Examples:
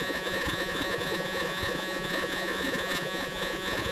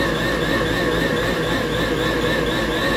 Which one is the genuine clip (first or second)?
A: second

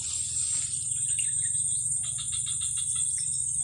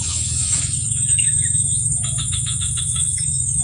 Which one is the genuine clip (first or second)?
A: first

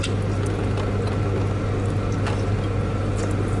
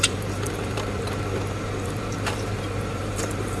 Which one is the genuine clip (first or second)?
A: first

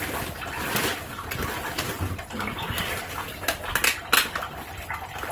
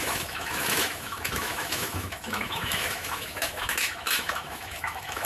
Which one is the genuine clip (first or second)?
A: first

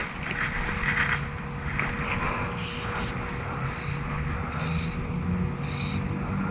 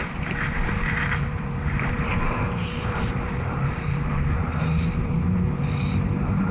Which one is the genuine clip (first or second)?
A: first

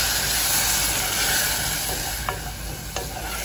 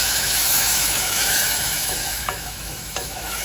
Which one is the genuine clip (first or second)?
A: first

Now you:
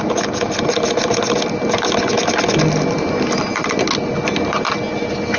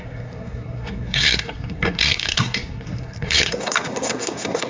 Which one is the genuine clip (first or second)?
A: first